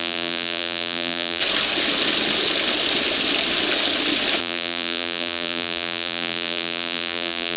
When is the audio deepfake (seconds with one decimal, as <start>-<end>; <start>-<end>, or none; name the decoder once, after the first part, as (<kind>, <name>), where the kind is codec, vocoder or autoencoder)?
0.0-1.4 (vocoder, BigVGAN v2); 4.4-7.6